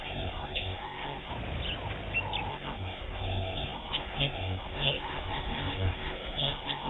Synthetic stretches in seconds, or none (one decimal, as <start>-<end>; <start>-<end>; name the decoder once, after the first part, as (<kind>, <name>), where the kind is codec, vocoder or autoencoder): 0.0-1.3 (codec, SNAC); 2.5-6.9